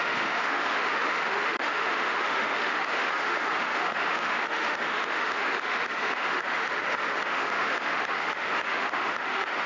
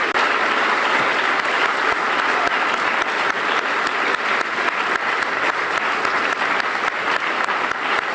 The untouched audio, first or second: second